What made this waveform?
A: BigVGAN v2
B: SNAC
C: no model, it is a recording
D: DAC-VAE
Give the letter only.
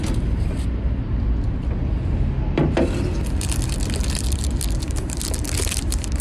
C